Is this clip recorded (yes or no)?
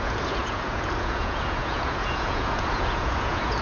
no